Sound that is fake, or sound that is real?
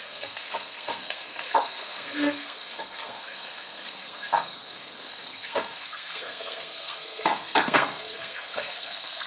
fake